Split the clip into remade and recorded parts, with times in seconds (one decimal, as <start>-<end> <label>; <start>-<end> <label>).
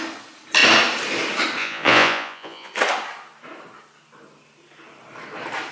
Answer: 0.0-1.6 recorded; 1.6-2.7 remade; 2.7-5.7 recorded